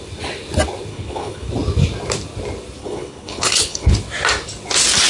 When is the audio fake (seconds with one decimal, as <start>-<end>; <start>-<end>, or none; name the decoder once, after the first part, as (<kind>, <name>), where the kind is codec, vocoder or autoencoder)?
0.9-1.5 (codec, HILCodec); 2.8-3.9